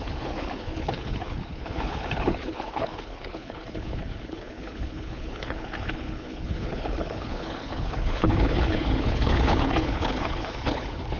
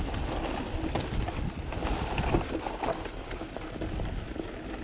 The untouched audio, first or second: second